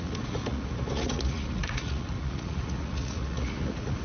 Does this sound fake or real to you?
fake